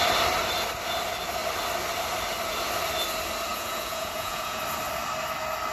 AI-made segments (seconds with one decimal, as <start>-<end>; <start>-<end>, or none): 3.5-4.6